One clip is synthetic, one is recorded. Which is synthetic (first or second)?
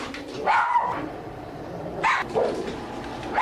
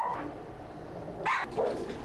first